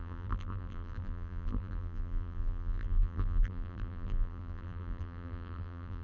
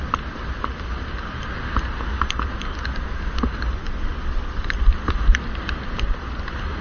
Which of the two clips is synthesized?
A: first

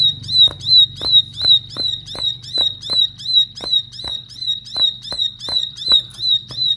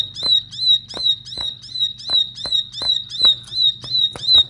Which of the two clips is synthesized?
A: first